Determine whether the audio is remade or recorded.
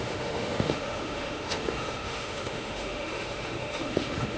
remade